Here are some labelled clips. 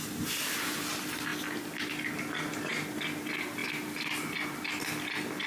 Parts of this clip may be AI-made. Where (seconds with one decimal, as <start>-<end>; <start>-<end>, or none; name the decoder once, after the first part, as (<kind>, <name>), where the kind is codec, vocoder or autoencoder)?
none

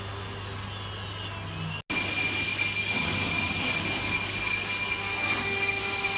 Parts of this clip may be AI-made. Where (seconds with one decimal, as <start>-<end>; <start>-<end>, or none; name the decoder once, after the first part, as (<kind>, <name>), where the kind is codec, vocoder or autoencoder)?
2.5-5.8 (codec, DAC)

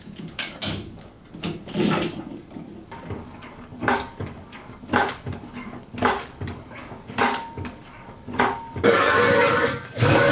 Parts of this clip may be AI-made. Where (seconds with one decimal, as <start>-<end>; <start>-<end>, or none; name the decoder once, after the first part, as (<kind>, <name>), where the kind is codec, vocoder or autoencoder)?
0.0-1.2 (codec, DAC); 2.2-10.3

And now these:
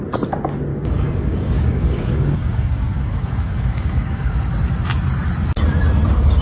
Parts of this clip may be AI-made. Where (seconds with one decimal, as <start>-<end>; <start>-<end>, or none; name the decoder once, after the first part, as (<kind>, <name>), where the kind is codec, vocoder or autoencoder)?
0.7-4.5 (codec, DAC)

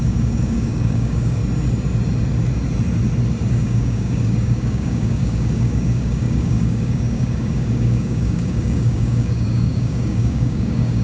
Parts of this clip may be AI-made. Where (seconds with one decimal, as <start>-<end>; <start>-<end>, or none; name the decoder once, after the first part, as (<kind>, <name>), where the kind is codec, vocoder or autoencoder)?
0.0-1.4 (codec, DAC); 3.5-11.0

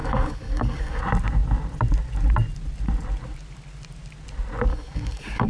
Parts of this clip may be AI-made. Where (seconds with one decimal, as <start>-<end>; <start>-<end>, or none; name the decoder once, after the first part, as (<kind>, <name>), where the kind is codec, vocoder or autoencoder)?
0.0-1.0 (codec, DAC); 4.7-5.5